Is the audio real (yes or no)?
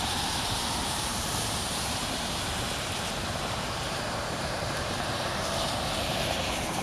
no